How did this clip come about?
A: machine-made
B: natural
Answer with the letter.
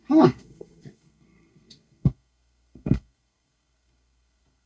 A